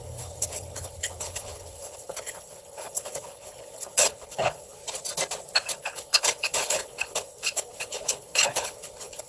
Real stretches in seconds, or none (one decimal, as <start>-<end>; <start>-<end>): 4.8-5.8